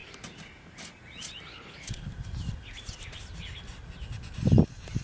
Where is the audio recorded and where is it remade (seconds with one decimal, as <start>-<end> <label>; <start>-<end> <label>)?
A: 0.0-1.5 recorded; 1.5-2.1 remade; 2.1-5.0 recorded